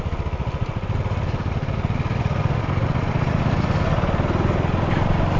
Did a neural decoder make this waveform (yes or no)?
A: no